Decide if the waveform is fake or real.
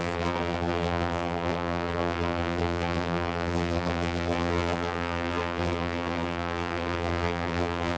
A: fake